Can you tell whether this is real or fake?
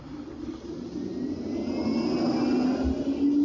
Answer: real